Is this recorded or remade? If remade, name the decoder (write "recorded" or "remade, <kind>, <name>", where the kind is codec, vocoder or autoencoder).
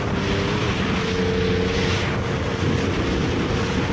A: recorded